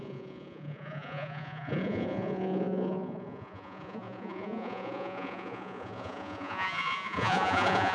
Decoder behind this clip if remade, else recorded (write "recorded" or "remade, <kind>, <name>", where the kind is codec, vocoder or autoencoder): remade, vocoder, Vocos